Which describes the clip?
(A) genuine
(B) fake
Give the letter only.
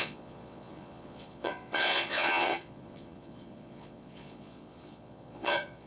B